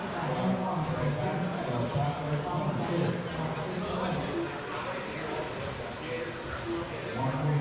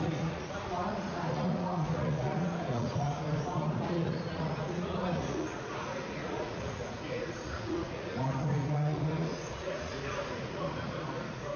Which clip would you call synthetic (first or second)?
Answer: second